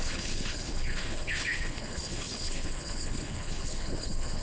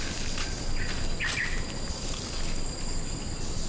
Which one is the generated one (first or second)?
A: first